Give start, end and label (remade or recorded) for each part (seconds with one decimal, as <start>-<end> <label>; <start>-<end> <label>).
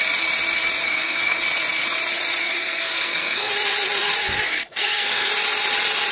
0.0-0.8 recorded; 0.8-1.4 remade; 1.4-2.4 recorded; 2.4-3.5 remade; 3.5-4.2 recorded; 4.2-5.3 remade; 5.3-6.1 recorded